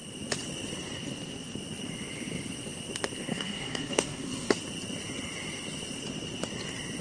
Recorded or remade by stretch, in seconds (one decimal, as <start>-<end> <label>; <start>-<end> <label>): 0.0-3.3 recorded; 3.3-4.5 remade; 4.5-7.0 recorded